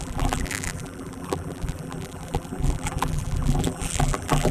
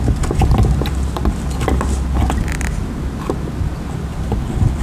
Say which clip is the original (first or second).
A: second